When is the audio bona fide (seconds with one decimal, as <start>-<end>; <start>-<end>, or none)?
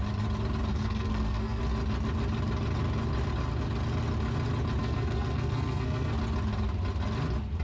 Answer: 0.0-0.7; 1.6-4.8; 6.1-7.6